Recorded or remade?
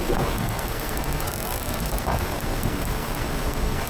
remade